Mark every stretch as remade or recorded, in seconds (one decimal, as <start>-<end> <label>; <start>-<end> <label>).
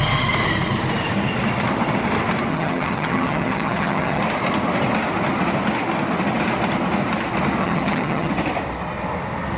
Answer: 0.0-2.5 recorded; 2.5-4.2 remade; 4.2-7.6 recorded; 7.6-8.3 remade; 8.3-9.6 recorded